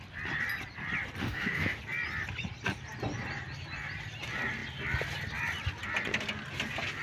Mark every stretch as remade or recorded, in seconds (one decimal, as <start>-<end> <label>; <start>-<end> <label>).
0.0-1.2 recorded; 1.2-1.8 remade; 1.8-7.0 recorded